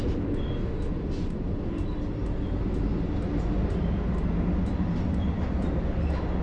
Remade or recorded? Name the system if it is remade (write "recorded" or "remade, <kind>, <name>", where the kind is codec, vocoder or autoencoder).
recorded